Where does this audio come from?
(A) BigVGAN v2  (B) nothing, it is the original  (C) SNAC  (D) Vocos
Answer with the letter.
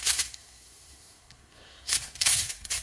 C